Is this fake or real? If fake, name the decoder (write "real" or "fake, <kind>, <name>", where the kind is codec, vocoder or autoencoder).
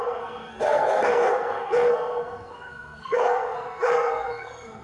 fake, codec, SNAC